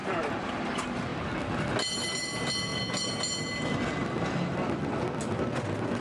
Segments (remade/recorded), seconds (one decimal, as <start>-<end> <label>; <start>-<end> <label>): 0.0-0.6 remade; 0.6-6.0 recorded